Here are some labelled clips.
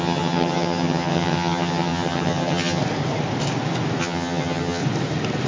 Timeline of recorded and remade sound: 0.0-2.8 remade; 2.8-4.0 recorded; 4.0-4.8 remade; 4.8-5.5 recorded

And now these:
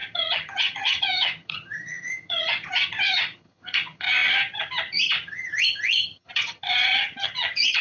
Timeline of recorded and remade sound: 0.0-7.8 remade